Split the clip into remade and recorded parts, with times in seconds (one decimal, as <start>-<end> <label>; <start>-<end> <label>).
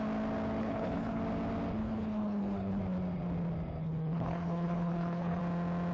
0.0-0.6 recorded; 0.6-1.2 remade; 1.2-1.8 recorded; 1.8-2.8 remade; 2.8-3.8 recorded; 3.8-5.4 remade; 5.4-5.9 recorded